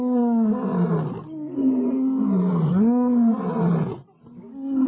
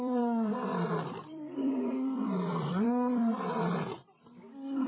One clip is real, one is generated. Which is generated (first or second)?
second